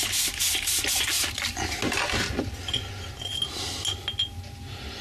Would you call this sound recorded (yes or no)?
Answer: yes